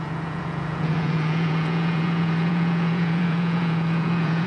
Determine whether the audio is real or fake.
fake